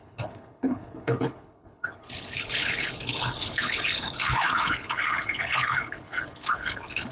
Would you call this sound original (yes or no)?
no